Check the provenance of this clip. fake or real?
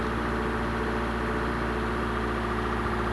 real